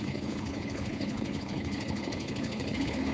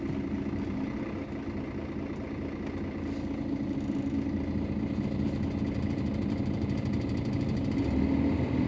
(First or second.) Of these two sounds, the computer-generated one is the first